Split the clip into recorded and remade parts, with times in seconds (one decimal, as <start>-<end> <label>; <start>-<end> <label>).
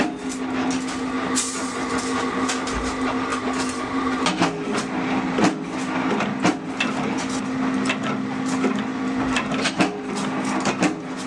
0.0-3.3 recorded; 3.3-4.0 remade; 4.0-8.9 recorded; 8.9-9.7 remade; 9.7-11.3 recorded